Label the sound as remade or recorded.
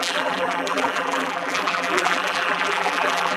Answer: remade